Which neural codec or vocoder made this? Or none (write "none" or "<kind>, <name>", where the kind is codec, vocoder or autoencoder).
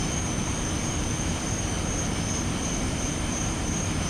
vocoder, BigVGAN v2